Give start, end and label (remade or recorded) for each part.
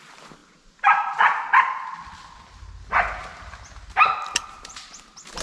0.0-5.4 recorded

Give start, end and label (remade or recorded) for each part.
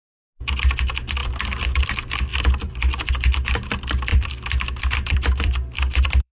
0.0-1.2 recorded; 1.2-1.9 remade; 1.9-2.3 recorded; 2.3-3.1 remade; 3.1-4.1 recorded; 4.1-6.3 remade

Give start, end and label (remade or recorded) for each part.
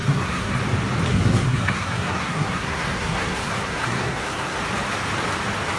0.0-0.6 remade; 0.6-1.1 recorded; 1.1-4.6 remade; 4.6-5.8 recorded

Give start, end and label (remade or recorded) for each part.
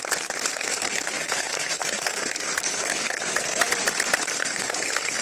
0.0-0.5 recorded; 0.5-3.6 remade; 3.6-4.4 recorded; 4.4-5.2 remade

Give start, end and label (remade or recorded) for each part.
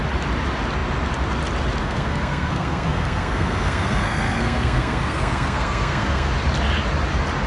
0.0-1.8 recorded; 1.8-6.3 remade; 6.3-7.5 recorded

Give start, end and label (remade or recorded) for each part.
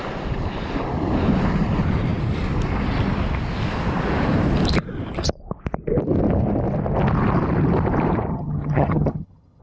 0.0-8.3 recorded; 8.3-9.6 remade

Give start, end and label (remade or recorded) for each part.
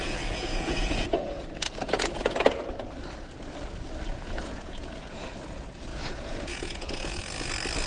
0.0-2.7 remade; 2.7-4.1 recorded; 4.1-5.3 remade; 5.3-5.9 recorded; 5.9-7.2 remade; 7.2-7.9 recorded